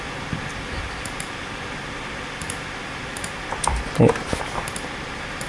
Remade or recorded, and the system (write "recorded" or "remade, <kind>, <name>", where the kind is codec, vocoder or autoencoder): remade, vocoder, BigVGAN v2